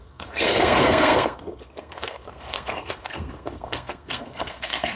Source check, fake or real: fake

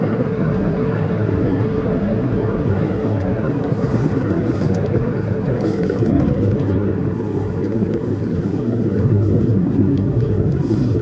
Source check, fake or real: fake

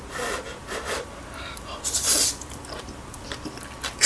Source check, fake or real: real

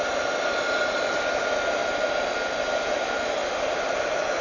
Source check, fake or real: real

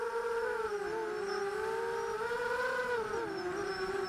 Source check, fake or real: real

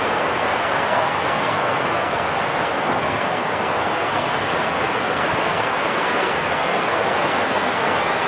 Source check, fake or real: fake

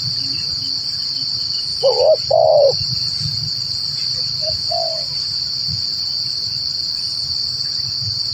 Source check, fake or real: real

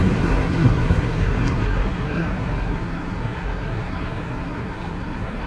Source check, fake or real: fake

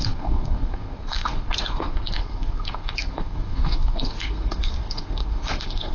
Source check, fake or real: fake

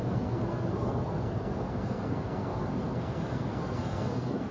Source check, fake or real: fake